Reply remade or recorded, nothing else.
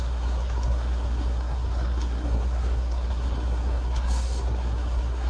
remade